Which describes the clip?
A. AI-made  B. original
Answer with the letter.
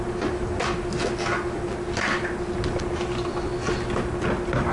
B